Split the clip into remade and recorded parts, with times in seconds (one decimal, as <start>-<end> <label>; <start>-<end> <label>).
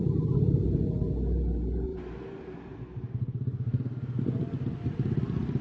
0.0-1.9 recorded; 1.9-3.1 remade; 3.1-5.6 recorded